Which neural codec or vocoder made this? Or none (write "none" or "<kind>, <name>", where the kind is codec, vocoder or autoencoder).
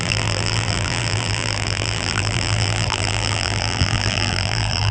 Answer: vocoder, BigVGAN v2